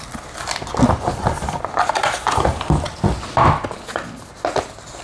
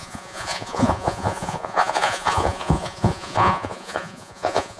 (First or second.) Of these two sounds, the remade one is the second